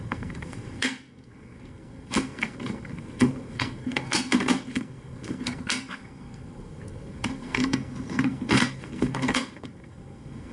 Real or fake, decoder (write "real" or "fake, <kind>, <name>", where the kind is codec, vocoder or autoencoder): fake, codec, SNAC